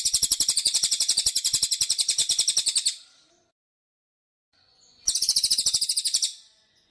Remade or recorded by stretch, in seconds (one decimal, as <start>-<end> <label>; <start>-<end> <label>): 0.0-2.2 remade; 2.2-3.5 recorded; 3.5-6.9 remade